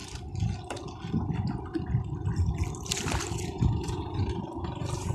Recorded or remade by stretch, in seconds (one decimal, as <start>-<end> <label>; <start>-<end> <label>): 0.0-2.7 recorded; 2.7-5.1 remade